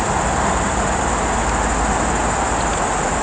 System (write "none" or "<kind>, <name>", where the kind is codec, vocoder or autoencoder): none